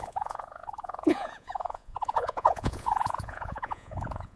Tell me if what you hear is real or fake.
fake